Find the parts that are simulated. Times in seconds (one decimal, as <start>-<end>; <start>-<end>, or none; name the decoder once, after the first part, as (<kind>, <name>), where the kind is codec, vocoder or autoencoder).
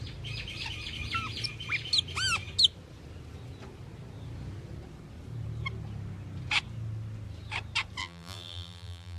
8.0-9.2 (vocoder, BigVGAN v2)